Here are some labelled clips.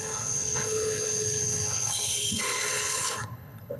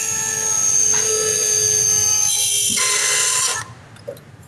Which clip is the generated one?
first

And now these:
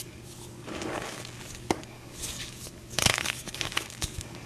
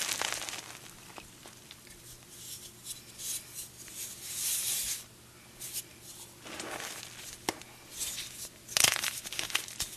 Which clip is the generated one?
first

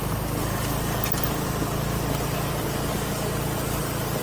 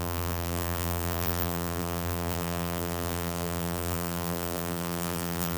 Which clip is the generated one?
second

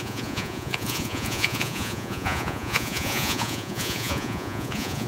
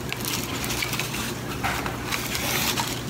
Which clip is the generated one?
first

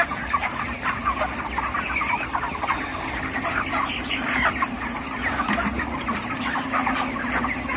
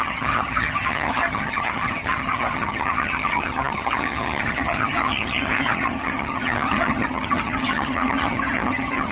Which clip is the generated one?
second